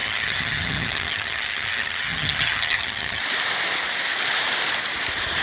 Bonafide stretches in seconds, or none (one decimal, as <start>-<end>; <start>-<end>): 3.2-5.4